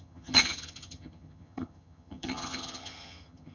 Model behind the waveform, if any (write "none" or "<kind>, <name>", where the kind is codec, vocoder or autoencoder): vocoder, HiFi-GAN